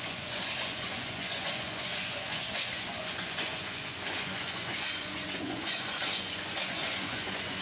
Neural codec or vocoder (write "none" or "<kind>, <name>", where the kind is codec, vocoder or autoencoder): vocoder, Vocos